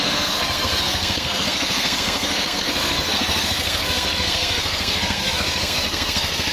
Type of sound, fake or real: fake